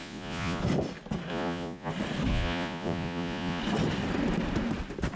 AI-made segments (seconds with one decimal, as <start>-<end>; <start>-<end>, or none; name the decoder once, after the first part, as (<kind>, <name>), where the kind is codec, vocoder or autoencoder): 0.0-0.6 (vocoder, Vocos); 1.3-1.9; 2.3-3.6